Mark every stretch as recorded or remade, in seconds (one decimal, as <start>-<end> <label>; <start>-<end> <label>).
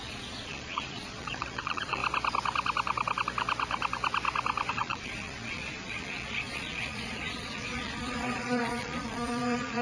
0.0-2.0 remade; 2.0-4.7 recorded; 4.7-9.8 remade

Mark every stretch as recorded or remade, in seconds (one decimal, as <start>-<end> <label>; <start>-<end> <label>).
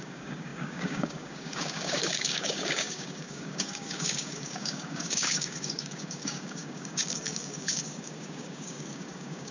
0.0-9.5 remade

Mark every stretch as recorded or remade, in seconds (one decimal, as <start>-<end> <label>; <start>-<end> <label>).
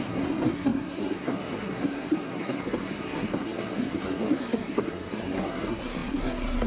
0.0-6.7 remade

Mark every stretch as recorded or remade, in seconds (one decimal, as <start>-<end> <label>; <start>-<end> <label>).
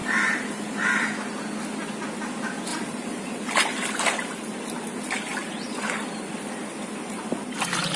0.0-1.4 remade; 1.4-2.7 recorded; 2.7-4.0 remade; 4.0-5.3 recorded; 5.3-6.3 remade; 6.3-8.0 recorded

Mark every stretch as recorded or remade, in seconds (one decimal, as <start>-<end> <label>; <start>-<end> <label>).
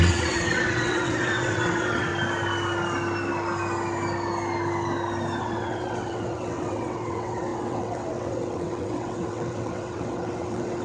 0.0-2.1 remade; 2.1-5.4 recorded; 5.4-10.8 remade